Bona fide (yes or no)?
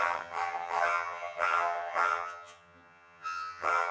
no